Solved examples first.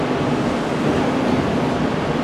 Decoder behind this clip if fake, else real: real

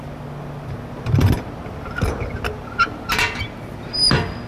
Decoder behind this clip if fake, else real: real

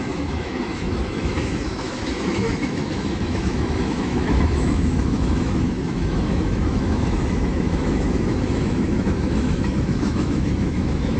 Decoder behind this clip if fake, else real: fake, autoencoder, DAC-VAE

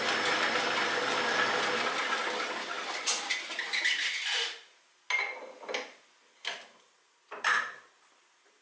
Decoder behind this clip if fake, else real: real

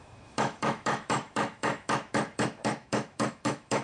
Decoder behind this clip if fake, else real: fake, autoencoder, DAC-VAE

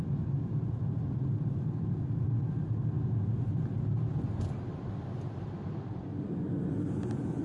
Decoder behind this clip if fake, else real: real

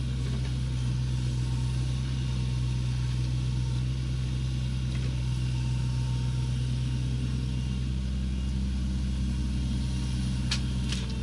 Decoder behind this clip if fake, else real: real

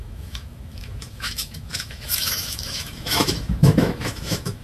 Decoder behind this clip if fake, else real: fake, autoencoder, DAC-VAE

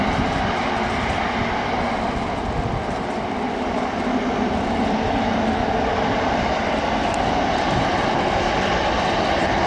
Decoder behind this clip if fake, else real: real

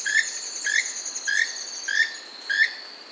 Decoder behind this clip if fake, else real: real